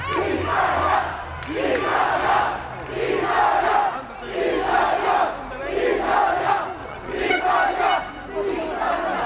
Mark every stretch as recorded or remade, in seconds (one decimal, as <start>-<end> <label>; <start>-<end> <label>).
0.0-6.8 recorded; 6.8-7.4 remade; 7.4-9.3 recorded